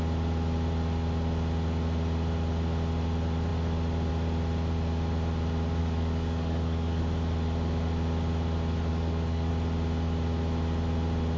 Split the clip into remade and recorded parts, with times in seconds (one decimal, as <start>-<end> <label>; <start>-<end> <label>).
0.0-5.8 recorded; 5.8-7.0 remade; 7.0-8.9 recorded; 8.9-9.5 remade; 9.5-11.4 recorded